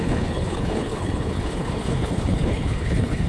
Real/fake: fake